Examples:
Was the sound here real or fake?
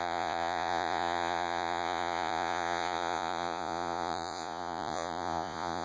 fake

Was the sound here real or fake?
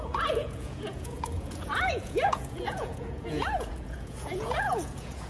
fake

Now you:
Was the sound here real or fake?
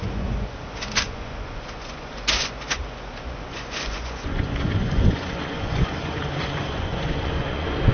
fake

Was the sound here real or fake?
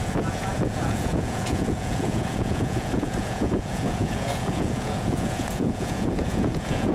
fake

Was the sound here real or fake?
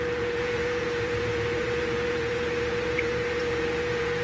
fake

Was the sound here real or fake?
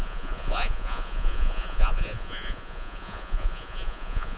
fake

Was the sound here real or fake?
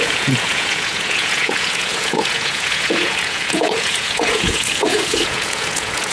fake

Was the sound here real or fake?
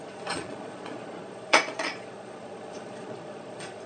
fake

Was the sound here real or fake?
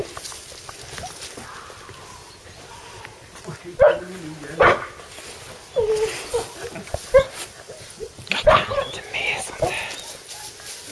real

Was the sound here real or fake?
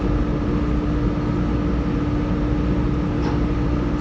real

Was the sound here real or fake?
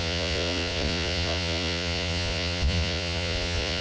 fake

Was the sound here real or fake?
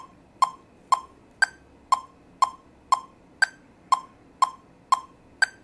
real